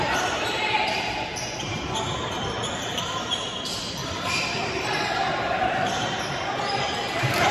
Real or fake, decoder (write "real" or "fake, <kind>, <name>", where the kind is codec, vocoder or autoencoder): fake, vocoder, BigVGAN v2